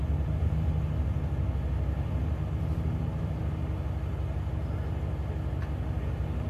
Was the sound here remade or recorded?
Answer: recorded